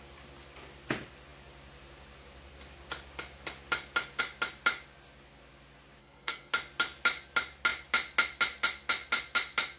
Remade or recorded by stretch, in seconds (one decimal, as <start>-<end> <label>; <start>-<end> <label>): 0.0-6.0 recorded; 6.0-6.5 remade; 6.5-9.8 recorded